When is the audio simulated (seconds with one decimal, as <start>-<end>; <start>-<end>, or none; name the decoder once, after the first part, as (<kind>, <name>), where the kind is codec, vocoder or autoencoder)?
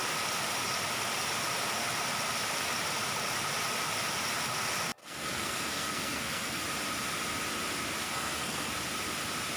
5.0-6.6 (codec, SNAC); 8.0-8.7